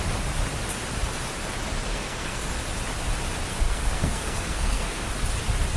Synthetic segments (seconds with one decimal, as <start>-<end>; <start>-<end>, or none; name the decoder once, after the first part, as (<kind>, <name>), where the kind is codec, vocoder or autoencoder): 1.9-2.5 (codec, SNAC); 3.5-5.1